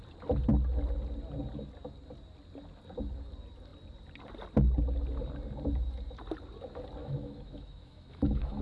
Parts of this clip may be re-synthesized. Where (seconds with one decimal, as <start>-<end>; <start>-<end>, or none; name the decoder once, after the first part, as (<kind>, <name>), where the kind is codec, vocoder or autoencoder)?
7.0-8.6 (autoencoder, DAC-VAE)